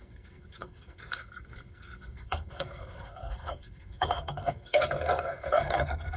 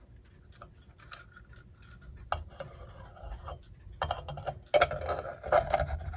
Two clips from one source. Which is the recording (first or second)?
second